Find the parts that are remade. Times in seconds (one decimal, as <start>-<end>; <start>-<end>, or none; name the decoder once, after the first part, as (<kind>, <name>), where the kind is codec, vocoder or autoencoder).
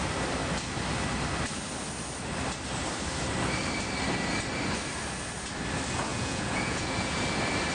6.1-7.2 (vocoder, Vocos)